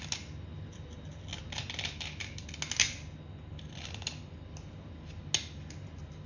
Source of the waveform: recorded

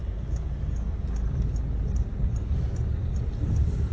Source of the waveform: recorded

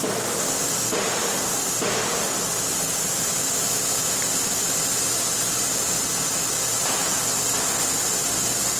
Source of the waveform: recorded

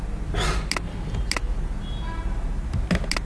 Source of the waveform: recorded